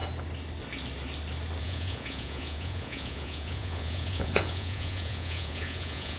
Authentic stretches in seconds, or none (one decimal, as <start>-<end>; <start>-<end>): 0.0-1.6